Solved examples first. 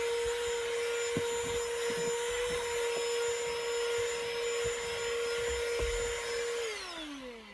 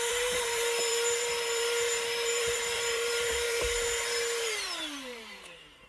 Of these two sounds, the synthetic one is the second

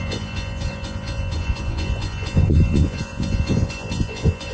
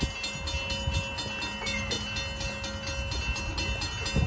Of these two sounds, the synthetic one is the first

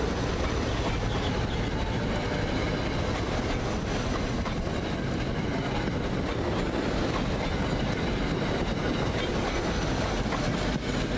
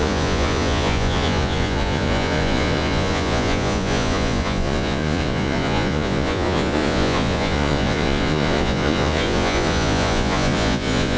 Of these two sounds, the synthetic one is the second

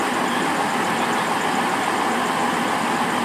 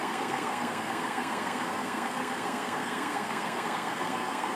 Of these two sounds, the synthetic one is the second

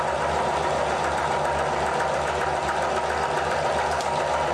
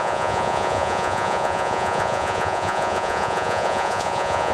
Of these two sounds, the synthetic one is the second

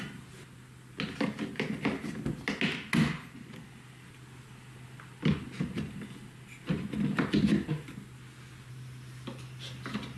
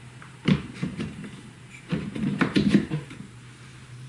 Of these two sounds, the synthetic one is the second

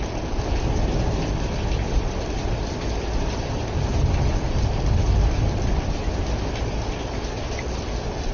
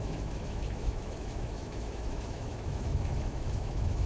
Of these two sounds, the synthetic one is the second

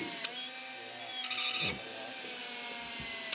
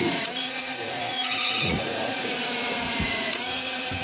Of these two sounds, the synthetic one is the second